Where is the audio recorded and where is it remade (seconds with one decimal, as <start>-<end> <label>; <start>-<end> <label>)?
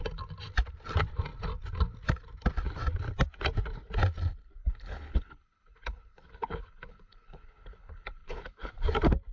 0.0-4.6 recorded; 4.6-8.7 remade; 8.7-9.3 recorded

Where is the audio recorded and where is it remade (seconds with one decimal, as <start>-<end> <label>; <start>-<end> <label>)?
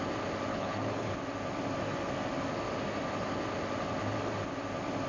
0.0-0.5 recorded; 0.5-1.1 remade; 1.1-5.1 recorded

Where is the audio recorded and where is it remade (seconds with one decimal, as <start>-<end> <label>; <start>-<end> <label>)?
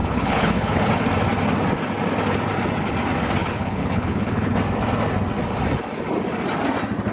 0.0-0.9 remade; 0.9-3.4 recorded; 3.4-4.5 remade; 4.5-7.1 recorded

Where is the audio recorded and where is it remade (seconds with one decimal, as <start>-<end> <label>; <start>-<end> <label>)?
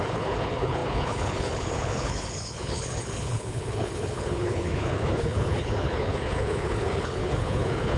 0.0-8.0 remade